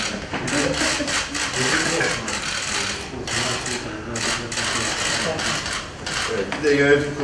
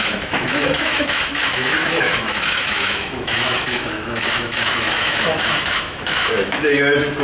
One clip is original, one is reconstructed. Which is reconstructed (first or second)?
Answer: second